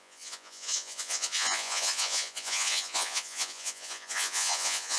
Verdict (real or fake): fake